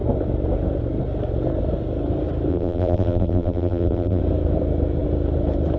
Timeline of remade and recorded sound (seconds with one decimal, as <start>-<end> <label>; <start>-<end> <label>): 0.0-2.5 recorded; 2.5-4.2 remade; 4.2-5.8 recorded